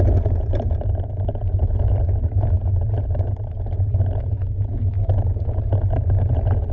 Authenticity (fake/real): real